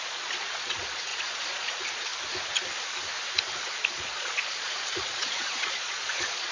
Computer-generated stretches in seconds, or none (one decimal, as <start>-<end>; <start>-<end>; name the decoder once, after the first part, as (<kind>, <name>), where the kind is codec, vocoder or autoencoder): 0.0-2.1 (vocoder, Vocos); 3.9-6.5